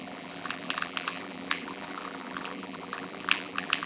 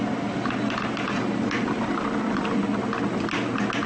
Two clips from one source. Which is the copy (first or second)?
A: first